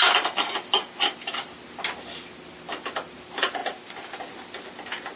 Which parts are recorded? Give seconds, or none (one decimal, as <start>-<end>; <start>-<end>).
0.0-5.2